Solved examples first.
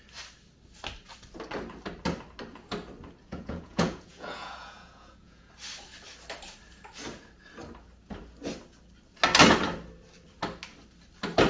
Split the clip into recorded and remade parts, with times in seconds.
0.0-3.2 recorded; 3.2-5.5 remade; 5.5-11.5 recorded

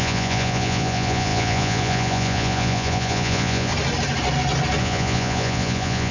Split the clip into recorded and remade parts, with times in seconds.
0.0-3.7 remade; 3.7-4.8 recorded; 4.8-6.1 remade

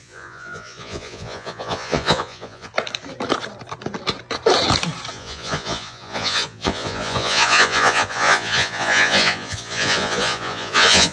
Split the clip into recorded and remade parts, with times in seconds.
0.0-2.7 remade; 2.7-5.1 recorded; 5.1-11.1 remade

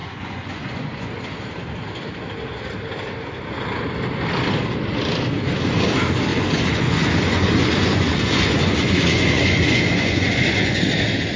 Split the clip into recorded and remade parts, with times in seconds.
0.0-1.2 remade; 1.2-6.3 recorded; 6.3-10.8 remade; 10.8-11.4 recorded

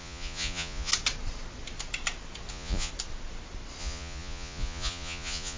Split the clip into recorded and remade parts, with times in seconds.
0.0-0.9 remade; 0.9-2.5 recorded; 2.5-2.9 remade; 2.9-3.8 recorded; 3.8-5.6 remade

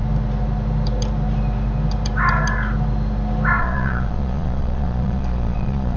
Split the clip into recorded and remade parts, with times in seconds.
0.0-3.6 recorded; 3.6-6.0 remade

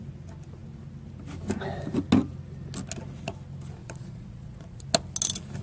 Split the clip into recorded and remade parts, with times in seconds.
0.0-3.8 recorded; 3.8-4.8 remade; 4.8-5.6 recorded

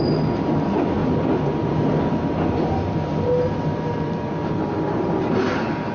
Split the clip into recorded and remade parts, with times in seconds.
0.0-5.9 recorded